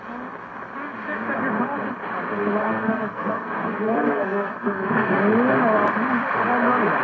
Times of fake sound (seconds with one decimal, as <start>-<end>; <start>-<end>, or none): 2.6-5.2